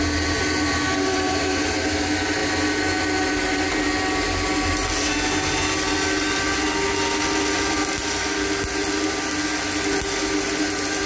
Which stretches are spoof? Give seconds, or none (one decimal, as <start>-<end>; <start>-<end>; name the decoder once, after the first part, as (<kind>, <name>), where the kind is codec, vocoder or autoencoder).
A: none